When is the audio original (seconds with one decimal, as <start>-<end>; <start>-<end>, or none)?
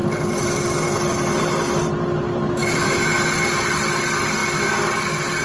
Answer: 0.0-2.6; 3.2-5.4